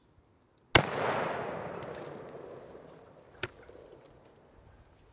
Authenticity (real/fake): real